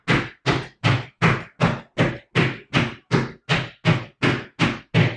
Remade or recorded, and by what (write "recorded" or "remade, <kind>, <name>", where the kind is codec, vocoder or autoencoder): recorded